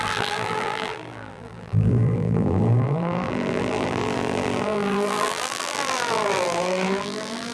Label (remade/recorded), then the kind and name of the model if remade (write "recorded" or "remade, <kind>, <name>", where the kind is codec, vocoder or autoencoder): remade, vocoder, BigVGAN v2